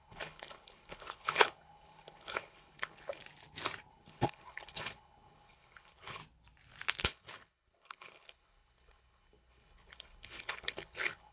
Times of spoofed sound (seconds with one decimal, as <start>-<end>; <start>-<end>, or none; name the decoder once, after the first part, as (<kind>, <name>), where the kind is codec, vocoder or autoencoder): 0.0-3.2 (codec, HILCodec); 3.9-6.2; 7.0-11.3